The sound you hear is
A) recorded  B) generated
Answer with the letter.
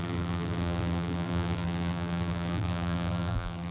B